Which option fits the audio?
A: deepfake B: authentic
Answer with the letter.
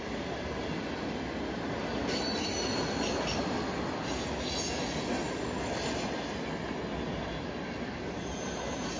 B